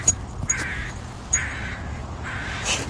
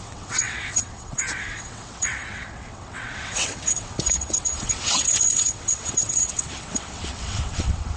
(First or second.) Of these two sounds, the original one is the first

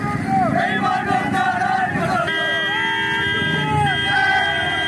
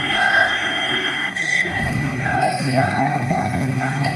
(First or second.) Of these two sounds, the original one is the first